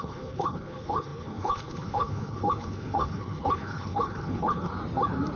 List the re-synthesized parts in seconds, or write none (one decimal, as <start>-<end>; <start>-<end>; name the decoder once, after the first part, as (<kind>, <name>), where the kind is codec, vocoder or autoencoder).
0.0-4.7 (codec, HILCodec)